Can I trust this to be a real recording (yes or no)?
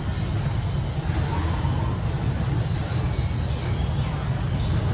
yes